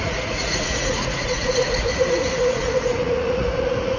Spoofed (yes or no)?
yes